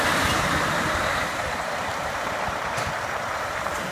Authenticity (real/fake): fake